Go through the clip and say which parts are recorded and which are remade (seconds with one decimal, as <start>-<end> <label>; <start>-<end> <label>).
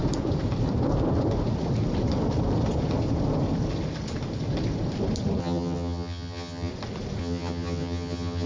0.0-5.4 recorded; 5.4-6.7 remade; 6.7-7.2 recorded; 7.2-8.5 remade